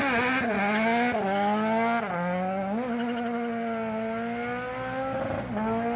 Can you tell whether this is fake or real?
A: real